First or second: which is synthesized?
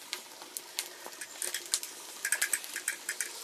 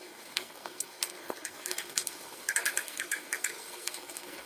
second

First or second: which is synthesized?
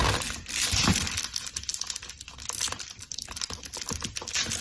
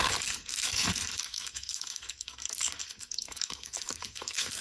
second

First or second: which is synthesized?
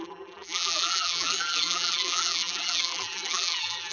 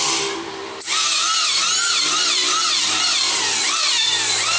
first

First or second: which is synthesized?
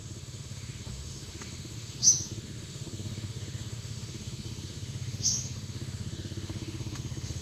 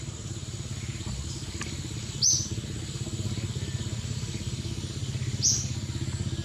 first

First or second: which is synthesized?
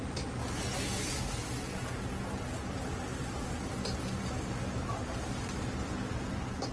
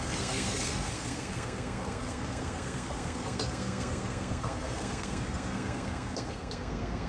second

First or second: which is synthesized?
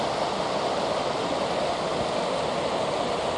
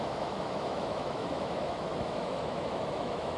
second